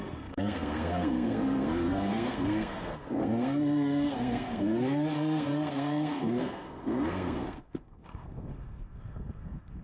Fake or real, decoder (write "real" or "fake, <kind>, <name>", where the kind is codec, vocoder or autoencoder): fake, codec, SNAC